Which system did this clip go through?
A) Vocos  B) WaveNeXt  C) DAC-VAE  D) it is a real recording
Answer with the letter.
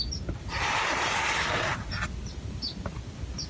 D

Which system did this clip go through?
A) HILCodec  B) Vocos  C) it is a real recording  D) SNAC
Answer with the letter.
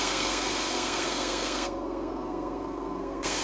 D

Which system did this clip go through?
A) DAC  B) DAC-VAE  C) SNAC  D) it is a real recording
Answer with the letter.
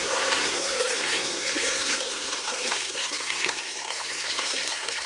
C